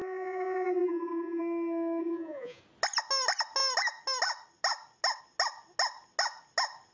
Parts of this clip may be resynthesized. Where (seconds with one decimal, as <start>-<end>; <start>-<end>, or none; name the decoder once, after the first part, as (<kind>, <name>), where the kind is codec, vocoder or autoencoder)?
0.0-1.4 (vocoder, Vocos); 2.0-2.6